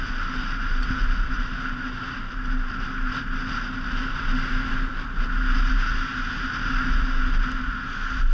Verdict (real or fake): real